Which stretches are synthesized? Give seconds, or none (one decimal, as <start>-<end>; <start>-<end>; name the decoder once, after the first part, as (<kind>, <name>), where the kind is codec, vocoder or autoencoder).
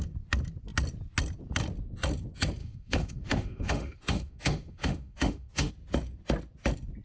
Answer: 2.6-5.7 (autoencoder, DAC-VAE)